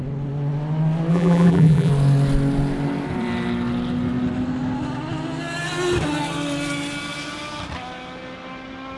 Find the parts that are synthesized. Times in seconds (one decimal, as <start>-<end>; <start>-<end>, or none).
1.1-1.9